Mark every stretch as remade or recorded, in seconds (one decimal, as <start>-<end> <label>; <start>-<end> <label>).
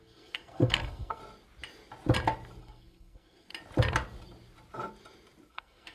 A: 0.0-1.2 remade; 1.2-2.6 recorded; 2.6-3.5 remade; 3.5-5.5 recorded; 5.5-5.9 remade